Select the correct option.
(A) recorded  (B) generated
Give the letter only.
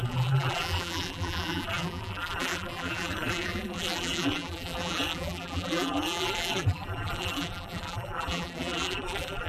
B